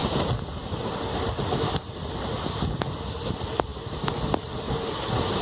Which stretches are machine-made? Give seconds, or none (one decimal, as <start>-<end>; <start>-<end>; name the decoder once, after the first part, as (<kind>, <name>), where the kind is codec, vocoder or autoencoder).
3.7-4.7 (vocoder, BigVGAN v2)